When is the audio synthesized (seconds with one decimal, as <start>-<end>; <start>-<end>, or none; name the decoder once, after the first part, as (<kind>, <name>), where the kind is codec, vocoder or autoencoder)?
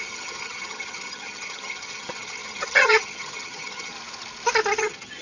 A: 0.0-3.9 (vocoder, HiFi-GAN); 4.8-5.2